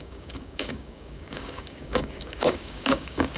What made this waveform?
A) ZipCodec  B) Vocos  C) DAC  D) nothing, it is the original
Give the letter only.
C